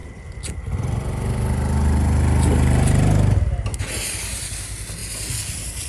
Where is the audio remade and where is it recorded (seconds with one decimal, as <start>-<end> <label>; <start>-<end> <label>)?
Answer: 0.0-5.9 recorded